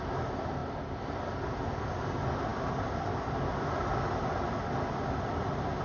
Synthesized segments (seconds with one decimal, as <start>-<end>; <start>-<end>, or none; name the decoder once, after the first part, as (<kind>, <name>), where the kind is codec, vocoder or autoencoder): none